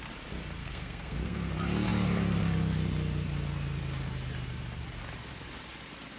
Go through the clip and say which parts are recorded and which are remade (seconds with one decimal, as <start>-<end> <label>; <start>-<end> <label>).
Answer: 0.0-0.6 recorded; 0.6-1.5 remade; 1.5-6.2 recorded